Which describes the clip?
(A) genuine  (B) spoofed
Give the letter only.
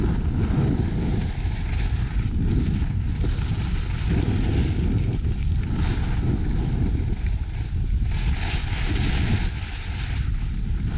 A